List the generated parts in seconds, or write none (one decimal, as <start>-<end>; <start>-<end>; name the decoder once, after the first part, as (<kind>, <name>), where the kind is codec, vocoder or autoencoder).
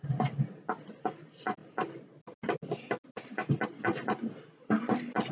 none